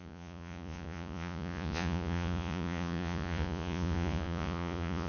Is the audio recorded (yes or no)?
no